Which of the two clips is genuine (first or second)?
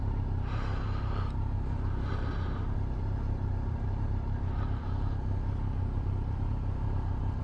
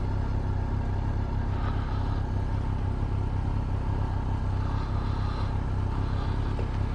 second